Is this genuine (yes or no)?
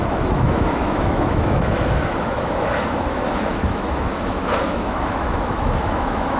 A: no